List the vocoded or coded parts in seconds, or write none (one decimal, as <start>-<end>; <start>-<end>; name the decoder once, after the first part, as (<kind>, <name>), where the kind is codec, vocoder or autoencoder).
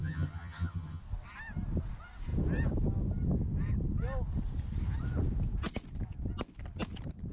0.0-1.0 (vocoder, HiFi-GAN)